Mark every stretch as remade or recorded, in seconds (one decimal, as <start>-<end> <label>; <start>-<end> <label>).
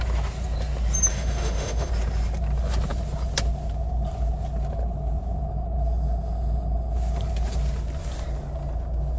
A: 0.0-1.1 recorded; 1.1-1.9 remade; 1.9-9.2 recorded